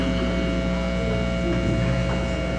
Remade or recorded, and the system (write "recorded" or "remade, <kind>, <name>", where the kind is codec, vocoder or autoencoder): recorded